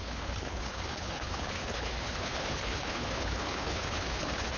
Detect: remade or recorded remade